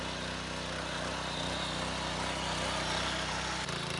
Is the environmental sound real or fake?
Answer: real